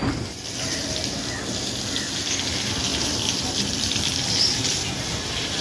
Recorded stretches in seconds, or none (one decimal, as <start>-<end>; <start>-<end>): 0.0-0.8; 1.4-2.9